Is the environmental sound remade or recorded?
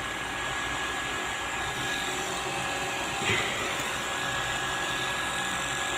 recorded